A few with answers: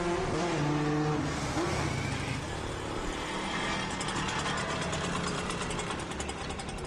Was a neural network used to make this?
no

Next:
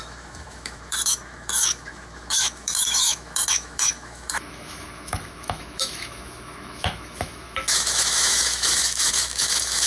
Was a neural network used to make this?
yes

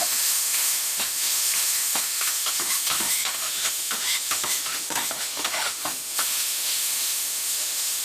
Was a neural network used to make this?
yes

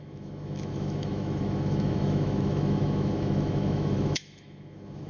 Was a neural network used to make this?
yes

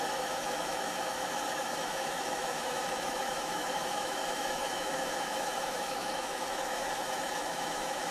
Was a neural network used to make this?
yes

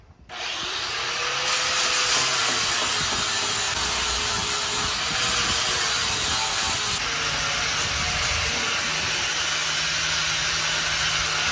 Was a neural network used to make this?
no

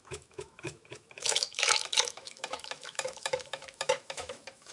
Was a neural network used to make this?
yes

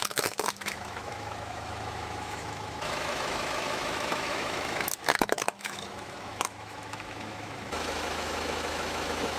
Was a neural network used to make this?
yes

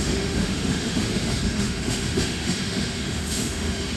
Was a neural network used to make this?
yes